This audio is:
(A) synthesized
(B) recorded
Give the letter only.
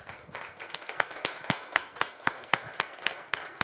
A